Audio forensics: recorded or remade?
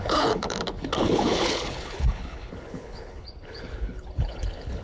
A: remade